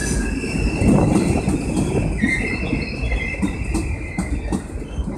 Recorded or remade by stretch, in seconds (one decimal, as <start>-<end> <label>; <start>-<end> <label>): 0.0-5.2 recorded